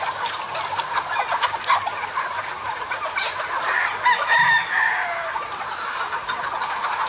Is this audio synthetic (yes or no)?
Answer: no